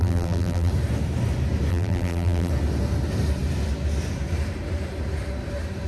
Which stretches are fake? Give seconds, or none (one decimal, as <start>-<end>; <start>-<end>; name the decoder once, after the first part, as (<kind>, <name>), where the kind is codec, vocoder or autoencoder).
0.0-0.7 (vocoder, BigVGAN v2); 1.7-2.5